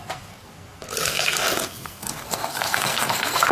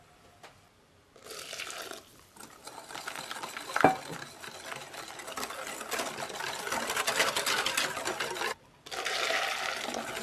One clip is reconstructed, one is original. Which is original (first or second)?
second